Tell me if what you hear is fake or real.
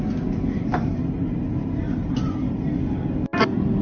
real